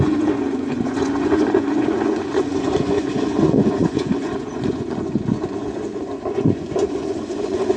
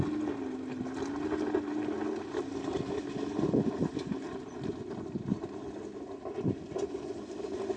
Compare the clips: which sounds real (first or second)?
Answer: second